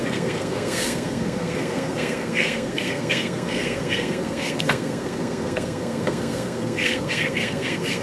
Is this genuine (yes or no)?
no